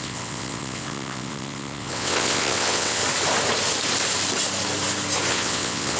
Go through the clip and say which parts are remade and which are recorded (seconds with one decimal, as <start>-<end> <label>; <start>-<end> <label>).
0.0-3.0 remade; 3.0-5.3 recorded; 5.3-6.0 remade